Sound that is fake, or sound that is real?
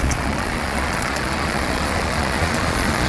fake